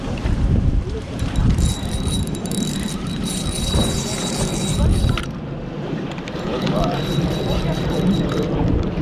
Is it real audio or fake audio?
fake